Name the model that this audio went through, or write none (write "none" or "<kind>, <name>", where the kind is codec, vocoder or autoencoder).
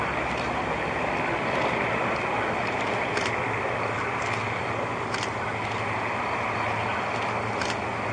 none